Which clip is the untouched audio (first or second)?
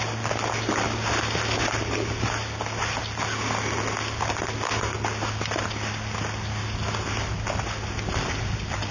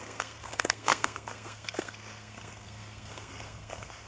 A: first